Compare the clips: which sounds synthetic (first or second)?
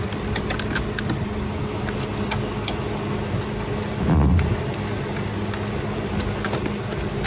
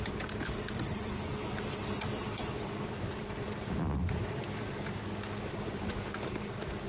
second